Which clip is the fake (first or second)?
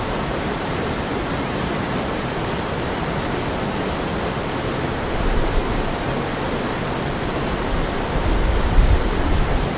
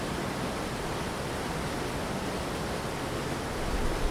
first